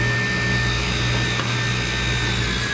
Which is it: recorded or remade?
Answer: recorded